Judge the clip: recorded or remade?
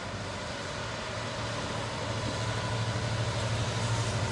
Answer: recorded